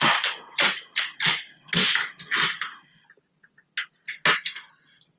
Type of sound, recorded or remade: recorded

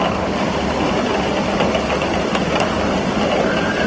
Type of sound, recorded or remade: recorded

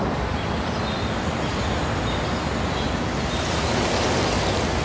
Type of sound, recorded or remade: recorded